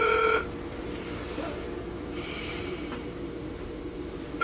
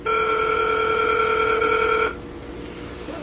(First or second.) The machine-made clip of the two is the first